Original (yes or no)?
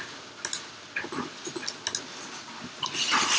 yes